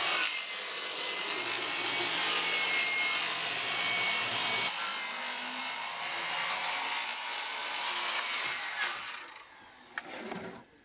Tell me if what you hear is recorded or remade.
recorded